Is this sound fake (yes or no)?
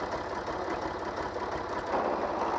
no